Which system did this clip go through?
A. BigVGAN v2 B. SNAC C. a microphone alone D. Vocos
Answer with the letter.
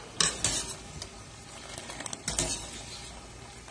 C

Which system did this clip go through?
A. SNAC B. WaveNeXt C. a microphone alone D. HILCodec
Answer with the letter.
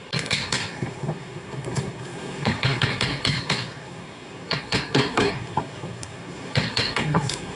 A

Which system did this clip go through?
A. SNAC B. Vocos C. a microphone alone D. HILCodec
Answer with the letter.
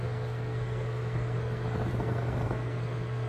A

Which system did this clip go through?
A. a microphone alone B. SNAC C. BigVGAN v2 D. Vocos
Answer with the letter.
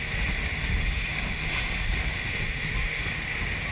A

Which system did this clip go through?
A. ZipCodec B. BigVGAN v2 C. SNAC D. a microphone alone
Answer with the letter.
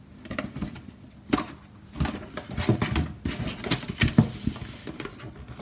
D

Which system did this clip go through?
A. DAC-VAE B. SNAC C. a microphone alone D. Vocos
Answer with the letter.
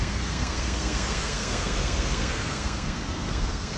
B